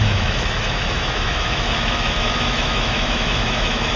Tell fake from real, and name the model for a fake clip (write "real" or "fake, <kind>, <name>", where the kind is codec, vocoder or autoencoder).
fake, autoencoder, DAC-VAE